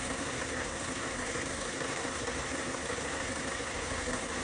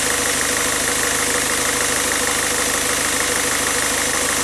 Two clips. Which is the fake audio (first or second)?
first